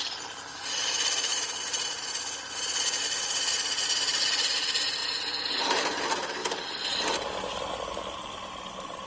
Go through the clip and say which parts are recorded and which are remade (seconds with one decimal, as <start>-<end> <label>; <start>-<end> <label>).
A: 0.0-1.3 recorded; 1.3-2.0 remade; 2.0-6.4 recorded; 6.4-7.0 remade; 7.0-9.1 recorded